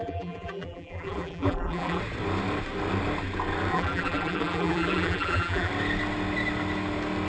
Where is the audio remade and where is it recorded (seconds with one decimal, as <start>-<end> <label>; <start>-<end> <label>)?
0.0-2.0 remade; 2.0-3.7 recorded; 3.7-5.7 remade; 5.7-7.3 recorded